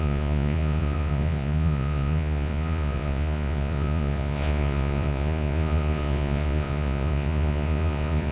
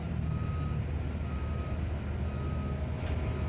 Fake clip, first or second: first